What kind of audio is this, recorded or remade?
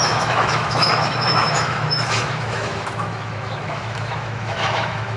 remade